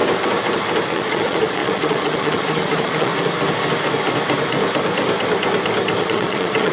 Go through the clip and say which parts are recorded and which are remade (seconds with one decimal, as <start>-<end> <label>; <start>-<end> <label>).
0.0-0.9 recorded; 0.9-3.1 remade; 3.1-6.0 recorded; 6.0-6.7 remade